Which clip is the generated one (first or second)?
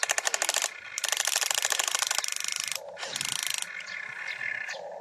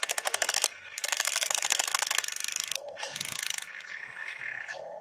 second